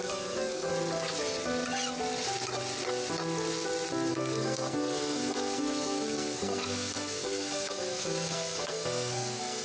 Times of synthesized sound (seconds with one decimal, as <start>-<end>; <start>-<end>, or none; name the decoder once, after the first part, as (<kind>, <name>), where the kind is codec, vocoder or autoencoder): 0.0-0.7 (codec, SNAC); 4.1-9.6